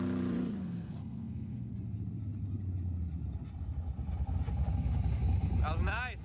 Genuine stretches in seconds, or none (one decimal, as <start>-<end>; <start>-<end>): 0.0-0.6; 1.7-6.2